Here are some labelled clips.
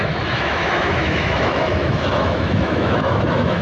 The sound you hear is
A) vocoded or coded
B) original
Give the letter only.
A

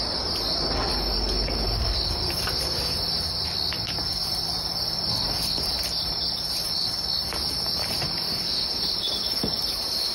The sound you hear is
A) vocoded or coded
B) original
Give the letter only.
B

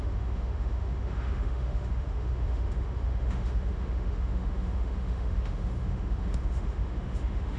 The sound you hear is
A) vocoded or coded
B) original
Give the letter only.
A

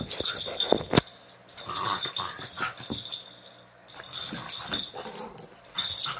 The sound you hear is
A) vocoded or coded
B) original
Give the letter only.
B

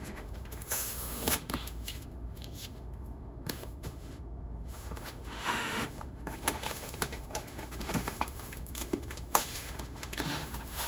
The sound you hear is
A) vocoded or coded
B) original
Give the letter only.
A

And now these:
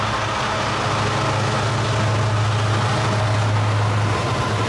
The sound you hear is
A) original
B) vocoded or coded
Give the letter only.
A